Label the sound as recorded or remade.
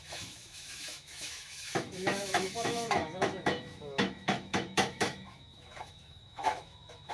remade